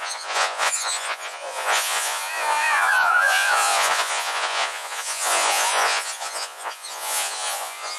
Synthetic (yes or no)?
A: yes